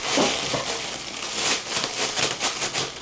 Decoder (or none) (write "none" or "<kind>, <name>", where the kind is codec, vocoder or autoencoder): none